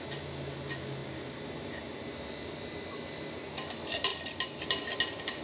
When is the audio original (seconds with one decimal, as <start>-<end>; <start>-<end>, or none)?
0.0-5.4